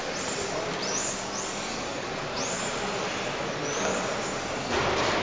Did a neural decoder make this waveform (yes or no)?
no